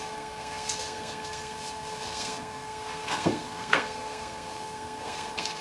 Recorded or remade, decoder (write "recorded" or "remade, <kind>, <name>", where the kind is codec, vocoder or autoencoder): remade, codec, SNAC